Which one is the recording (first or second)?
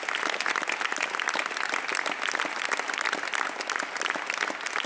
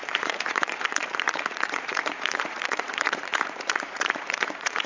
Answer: first